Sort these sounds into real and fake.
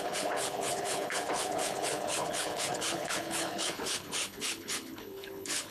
fake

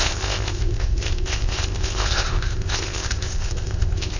fake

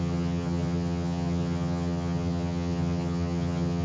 fake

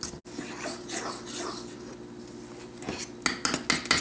real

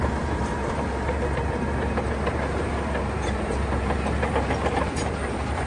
fake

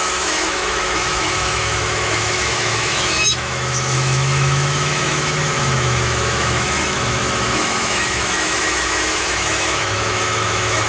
fake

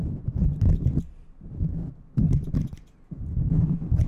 real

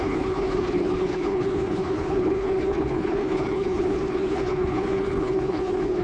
fake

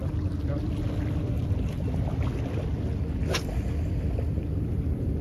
real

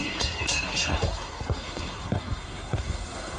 fake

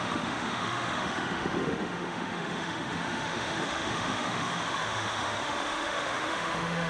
fake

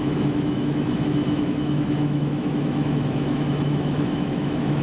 fake